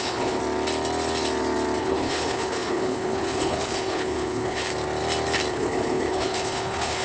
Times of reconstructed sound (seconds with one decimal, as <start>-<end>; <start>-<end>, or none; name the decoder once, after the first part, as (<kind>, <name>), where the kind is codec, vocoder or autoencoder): 0.0-0.4 (codec, HILCodec); 1.8-4.7; 5.5-7.0